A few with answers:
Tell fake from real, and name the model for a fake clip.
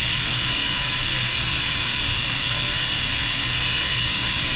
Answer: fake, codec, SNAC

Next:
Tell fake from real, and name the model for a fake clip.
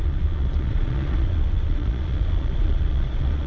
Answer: fake, vocoder, Vocos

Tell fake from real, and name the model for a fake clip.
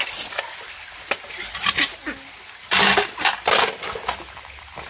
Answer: real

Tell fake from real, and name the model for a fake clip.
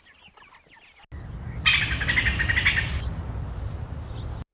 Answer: real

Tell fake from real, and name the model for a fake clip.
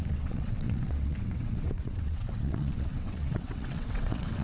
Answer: fake, vocoder, WaveNeXt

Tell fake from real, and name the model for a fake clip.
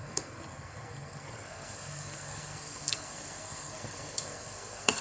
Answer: fake, codec, SNAC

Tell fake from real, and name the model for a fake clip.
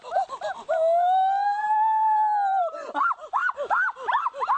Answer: real